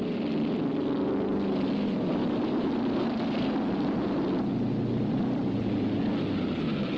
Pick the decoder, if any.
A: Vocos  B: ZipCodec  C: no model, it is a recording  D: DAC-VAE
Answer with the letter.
C